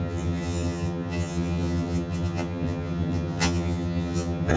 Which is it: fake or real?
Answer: fake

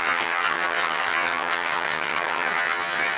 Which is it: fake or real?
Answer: fake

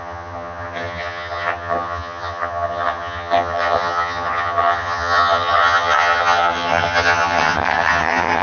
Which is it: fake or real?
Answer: fake